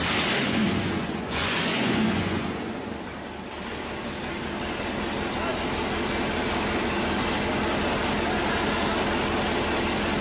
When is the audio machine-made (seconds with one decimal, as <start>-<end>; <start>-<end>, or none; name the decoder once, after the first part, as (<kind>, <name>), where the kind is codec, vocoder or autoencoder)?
0.4-2.9 (vocoder, Vocos)